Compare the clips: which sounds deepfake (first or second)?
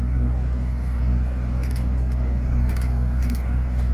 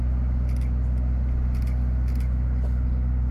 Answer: first